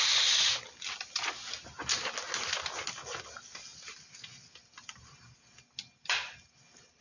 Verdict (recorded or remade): recorded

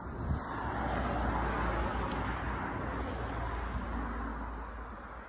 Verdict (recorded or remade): recorded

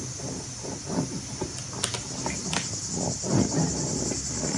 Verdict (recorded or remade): recorded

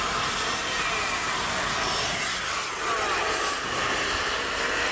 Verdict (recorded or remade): recorded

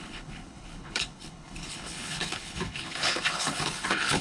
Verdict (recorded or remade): remade